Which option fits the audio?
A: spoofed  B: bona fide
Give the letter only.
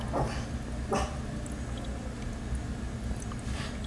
B